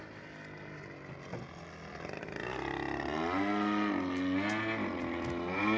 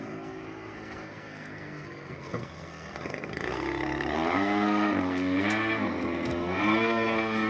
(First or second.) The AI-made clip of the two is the second